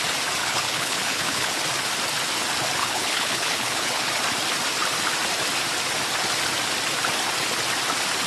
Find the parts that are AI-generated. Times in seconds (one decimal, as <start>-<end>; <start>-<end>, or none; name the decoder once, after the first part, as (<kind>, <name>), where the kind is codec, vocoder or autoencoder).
0.4-1.6 (codec, HILCodec); 2.8-4.1